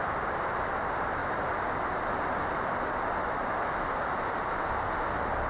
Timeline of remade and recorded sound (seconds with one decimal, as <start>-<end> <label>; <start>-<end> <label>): 0.0-5.5 recorded